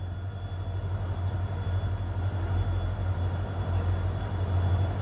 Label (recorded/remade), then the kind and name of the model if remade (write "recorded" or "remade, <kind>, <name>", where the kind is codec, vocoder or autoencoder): recorded